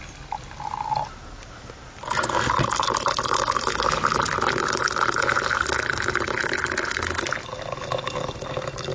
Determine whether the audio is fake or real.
real